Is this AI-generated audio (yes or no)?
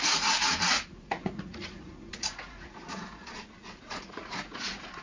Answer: yes